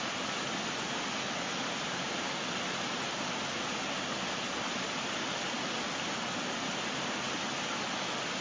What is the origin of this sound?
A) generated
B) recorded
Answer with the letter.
B